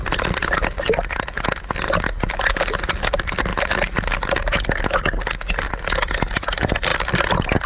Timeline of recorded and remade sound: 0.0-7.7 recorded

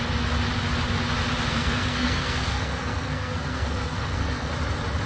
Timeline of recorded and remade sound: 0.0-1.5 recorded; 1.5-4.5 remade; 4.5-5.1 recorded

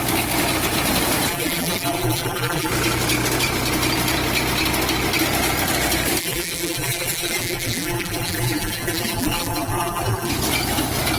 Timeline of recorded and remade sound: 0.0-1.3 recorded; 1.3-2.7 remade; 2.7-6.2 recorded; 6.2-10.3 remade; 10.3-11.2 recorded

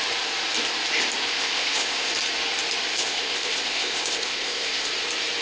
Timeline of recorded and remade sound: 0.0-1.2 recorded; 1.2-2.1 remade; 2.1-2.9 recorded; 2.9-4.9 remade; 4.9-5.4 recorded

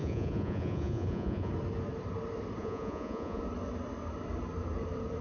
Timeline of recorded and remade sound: 0.0-1.5 remade; 1.5-2.6 recorded; 2.6-3.4 remade; 3.4-5.2 recorded

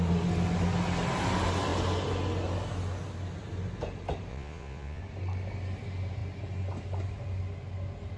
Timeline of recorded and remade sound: 0.0-4.3 recorded; 4.3-5.0 remade; 5.0-8.2 recorded

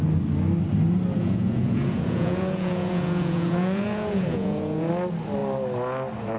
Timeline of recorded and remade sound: 0.0-1.2 recorded; 1.2-4.9 remade; 4.9-6.4 recorded